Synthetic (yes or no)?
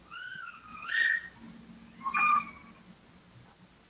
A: no